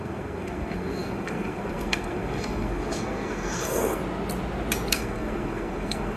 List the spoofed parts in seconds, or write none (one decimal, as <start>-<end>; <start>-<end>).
0.0-4.0; 4.9-6.2